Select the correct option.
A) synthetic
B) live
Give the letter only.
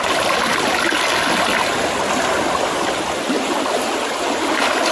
B